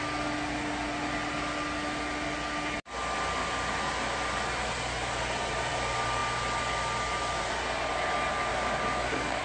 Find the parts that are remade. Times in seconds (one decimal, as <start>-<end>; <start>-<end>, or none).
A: 8.5-9.4